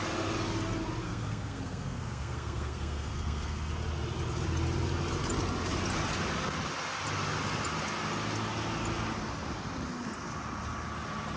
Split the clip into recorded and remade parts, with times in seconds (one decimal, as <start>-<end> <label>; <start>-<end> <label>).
0.0-1.0 recorded; 1.0-3.7 remade; 3.7-11.4 recorded